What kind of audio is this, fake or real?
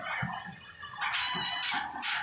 real